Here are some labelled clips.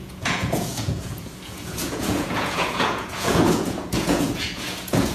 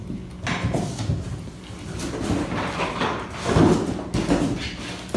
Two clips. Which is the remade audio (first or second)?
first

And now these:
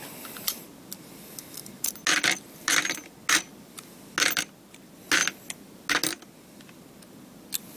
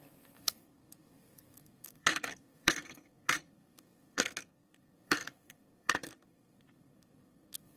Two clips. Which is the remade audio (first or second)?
second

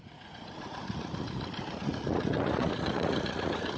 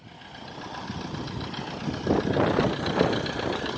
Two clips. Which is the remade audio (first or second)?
first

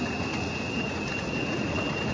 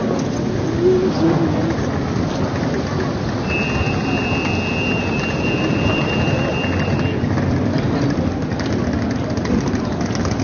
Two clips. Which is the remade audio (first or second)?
first